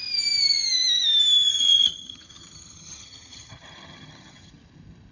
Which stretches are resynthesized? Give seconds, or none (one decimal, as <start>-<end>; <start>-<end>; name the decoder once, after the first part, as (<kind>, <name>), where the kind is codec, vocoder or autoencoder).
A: 1.5-4.5 (vocoder, HiFi-GAN)